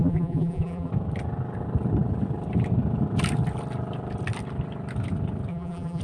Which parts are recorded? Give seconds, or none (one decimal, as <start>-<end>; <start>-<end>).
0.9-5.5